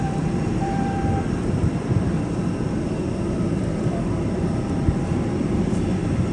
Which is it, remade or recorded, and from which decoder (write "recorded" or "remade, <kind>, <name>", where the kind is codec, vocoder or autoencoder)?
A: recorded